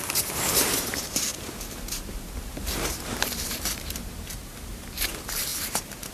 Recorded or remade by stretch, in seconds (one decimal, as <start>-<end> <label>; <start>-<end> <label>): 0.0-6.1 remade